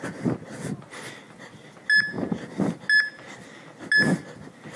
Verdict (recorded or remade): recorded